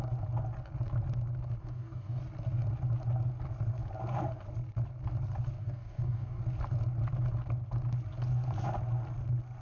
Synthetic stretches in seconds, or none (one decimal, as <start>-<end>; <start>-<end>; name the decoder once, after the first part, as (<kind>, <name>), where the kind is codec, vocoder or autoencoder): 1.6-2.2 (codec, DAC); 5.6-6.4